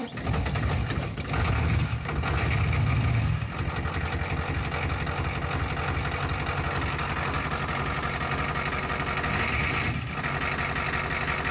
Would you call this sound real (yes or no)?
yes